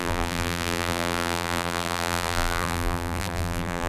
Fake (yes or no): yes